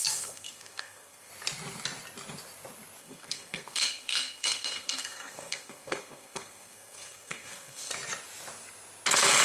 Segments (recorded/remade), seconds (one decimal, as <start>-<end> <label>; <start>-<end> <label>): 0.0-1.3 remade; 1.3-3.0 recorded; 3.0-7.9 remade; 7.9-9.4 recorded